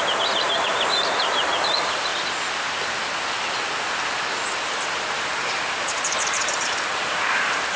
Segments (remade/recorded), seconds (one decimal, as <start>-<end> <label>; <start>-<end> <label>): 0.0-2.1 remade; 2.1-4.6 recorded; 4.6-7.8 remade